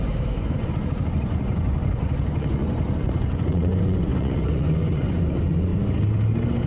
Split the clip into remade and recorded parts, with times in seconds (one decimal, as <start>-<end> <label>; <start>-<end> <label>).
0.0-5.7 remade; 5.7-6.7 recorded